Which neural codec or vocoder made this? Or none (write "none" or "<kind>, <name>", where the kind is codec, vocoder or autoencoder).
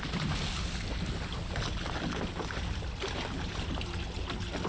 none